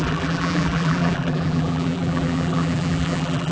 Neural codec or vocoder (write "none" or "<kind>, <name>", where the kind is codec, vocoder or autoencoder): vocoder, BigVGAN v2